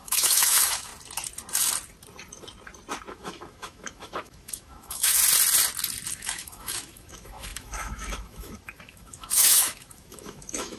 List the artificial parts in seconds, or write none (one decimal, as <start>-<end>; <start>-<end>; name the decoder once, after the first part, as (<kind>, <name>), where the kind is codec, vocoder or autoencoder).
0.0-0.9 (autoencoder, DAC-VAE); 3.1-5.2; 6.1-10.8